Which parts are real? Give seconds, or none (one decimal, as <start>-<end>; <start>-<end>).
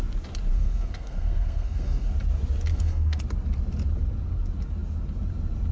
0.0-0.5; 2.1-2.7; 3.2-5.7